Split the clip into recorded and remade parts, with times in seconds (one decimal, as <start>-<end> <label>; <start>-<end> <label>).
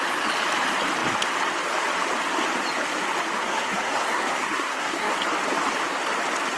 0.0-3.4 recorded; 3.4-5.1 remade; 5.1-6.6 recorded